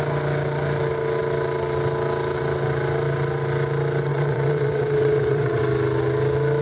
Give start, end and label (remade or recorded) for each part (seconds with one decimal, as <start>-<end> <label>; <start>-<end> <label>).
0.0-4.1 recorded; 4.1-5.6 remade; 5.6-6.6 recorded